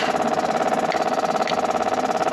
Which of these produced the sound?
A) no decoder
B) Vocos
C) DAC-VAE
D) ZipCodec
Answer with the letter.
A